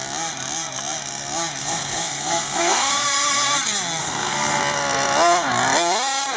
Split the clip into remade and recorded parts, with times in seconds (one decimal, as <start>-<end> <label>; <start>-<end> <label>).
0.0-1.6 recorded; 1.6-2.9 remade; 2.9-4.0 recorded; 4.0-4.6 remade; 4.6-6.4 recorded